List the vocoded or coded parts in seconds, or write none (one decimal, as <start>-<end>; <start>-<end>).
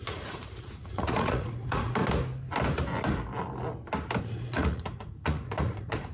0.0-2.0; 4.2-6.1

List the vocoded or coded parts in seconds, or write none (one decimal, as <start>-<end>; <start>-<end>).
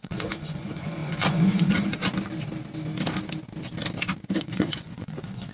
0.0-2.0; 4.4-5.5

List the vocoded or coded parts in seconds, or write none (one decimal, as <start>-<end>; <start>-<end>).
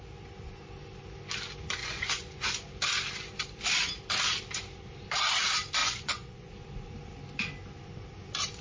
1.8-2.5; 5.8-6.5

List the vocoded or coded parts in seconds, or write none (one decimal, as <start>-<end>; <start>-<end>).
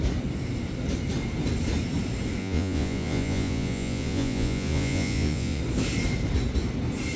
2.4-5.6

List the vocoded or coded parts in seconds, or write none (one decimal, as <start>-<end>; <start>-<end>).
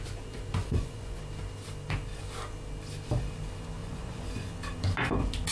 0.6-1.2; 3.8-4.5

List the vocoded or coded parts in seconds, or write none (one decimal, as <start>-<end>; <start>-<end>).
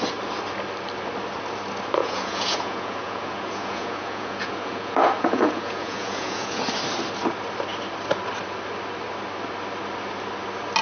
2.0-6.7